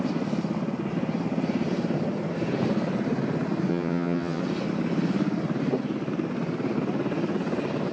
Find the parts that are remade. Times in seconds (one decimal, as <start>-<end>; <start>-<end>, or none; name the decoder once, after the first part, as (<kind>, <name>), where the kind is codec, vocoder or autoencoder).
3.7-4.4 (vocoder, HiFi-GAN)